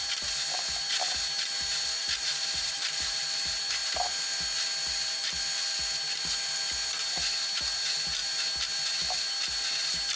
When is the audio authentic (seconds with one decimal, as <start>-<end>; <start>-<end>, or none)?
0.0-2.0; 3.2-10.2

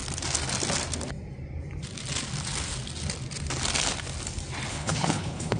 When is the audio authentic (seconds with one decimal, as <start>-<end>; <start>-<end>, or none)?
0.0-4.7